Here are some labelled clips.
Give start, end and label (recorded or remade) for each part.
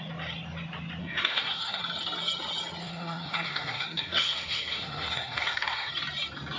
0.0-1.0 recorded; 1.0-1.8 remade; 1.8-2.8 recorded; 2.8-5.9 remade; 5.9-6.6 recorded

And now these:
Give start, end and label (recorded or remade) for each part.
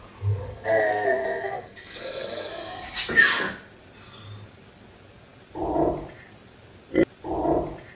0.0-0.4 recorded; 0.4-2.5 remade; 2.5-7.9 recorded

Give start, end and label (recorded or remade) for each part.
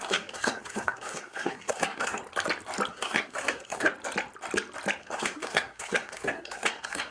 0.0-2.2 remade; 2.2-2.9 recorded; 2.9-3.9 remade; 3.9-5.0 recorded; 5.0-7.1 remade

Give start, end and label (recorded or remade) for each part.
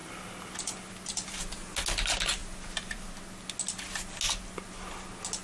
0.0-1.4 remade; 1.4-2.4 recorded; 2.4-3.1 remade; 3.1-5.4 recorded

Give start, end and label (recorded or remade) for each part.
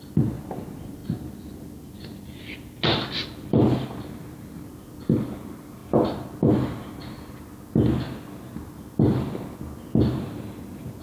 0.0-1.0 recorded; 1.0-2.0 remade; 2.0-3.2 recorded; 3.2-3.9 remade; 3.9-5.8 recorded; 5.8-6.9 remade; 6.9-11.0 recorded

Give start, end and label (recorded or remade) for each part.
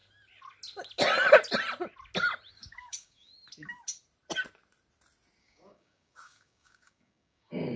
0.0-2.5 recorded; 2.5-3.3 remade; 3.3-5.4 recorded; 5.4-7.8 remade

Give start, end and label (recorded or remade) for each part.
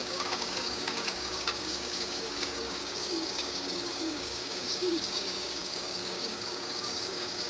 0.0-7.5 remade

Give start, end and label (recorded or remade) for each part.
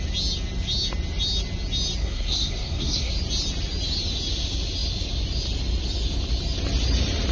0.0-2.0 recorded; 2.0-3.1 remade; 3.1-7.3 recorded